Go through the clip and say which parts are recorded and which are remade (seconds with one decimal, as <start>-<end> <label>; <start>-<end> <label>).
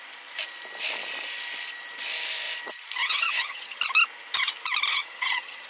0.0-3.0 recorded; 3.0-3.8 remade; 3.8-4.9 recorded; 4.9-5.7 remade